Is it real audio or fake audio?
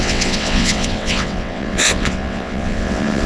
fake